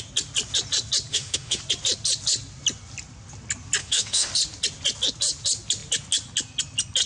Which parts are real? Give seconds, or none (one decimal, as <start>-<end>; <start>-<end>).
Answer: 0.0-1.1; 1.6-3.8; 4.3-7.1

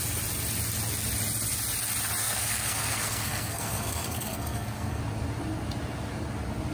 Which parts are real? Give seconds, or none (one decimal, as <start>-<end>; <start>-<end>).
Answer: 0.0-2.2; 5.0-6.7

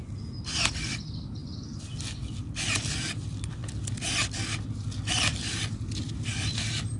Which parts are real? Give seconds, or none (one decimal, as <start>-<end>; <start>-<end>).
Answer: 0.0-7.0

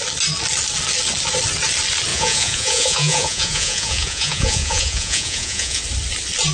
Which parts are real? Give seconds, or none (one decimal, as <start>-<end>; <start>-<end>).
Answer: 0.0-2.1; 5.8-6.5